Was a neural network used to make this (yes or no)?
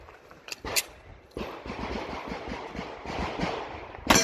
no